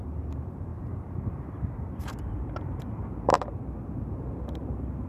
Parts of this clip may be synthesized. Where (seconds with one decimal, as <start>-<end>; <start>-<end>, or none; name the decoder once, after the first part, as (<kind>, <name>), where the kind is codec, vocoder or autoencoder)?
0.0-5.1 (vocoder, BigVGAN v2)